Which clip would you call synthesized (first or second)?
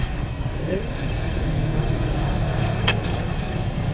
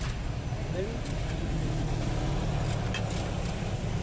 first